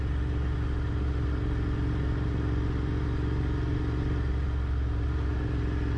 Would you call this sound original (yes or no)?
yes